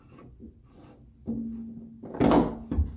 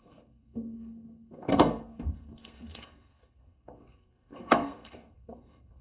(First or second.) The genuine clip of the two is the first